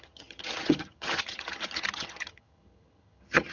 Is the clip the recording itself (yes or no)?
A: no